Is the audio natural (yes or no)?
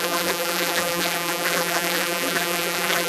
no